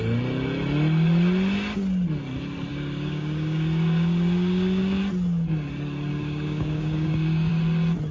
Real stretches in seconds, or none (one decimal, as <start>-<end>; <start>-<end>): 0.0-2.7; 5.0-6.1; 7.5-8.1